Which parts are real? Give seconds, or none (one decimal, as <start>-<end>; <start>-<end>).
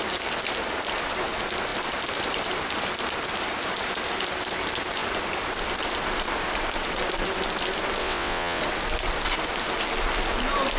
0.0-8.0; 8.6-10.8